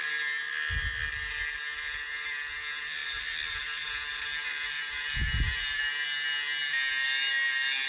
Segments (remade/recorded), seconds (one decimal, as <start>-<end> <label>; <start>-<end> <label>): 0.0-3.0 recorded; 3.0-5.9 remade; 5.9-7.9 recorded